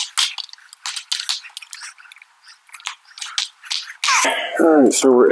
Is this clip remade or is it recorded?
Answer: recorded